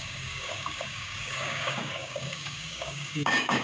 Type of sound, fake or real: fake